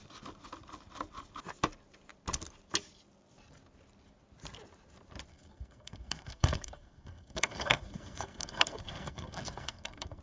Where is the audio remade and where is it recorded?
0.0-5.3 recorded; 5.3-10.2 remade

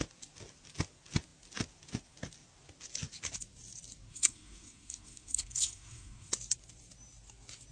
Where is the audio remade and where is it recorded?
0.0-4.1 recorded; 4.1-6.3 remade; 6.3-7.7 recorded

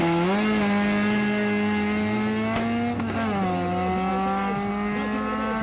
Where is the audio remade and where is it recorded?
0.0-5.6 recorded

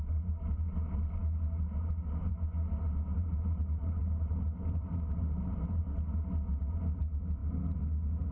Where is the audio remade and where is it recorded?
0.0-3.2 recorded; 3.2-5.8 remade; 5.8-8.3 recorded

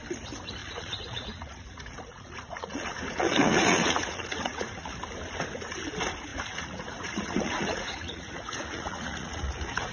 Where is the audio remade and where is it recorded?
0.0-0.6 recorded; 0.6-4.9 remade; 4.9-6.3 recorded; 6.3-9.9 remade

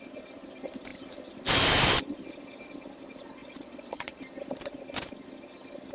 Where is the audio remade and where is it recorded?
0.0-3.4 recorded; 3.4-4.2 remade; 4.2-5.9 recorded

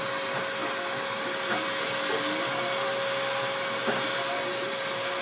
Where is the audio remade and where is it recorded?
0.0-3.8 recorded; 3.8-5.2 remade

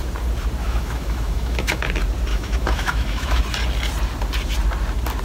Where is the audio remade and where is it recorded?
0.0-0.6 recorded; 0.6-1.9 remade; 1.9-2.3 recorded; 2.3-3.4 remade; 3.4-5.2 recorded